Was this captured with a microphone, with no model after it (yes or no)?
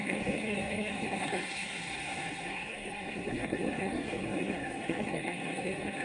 no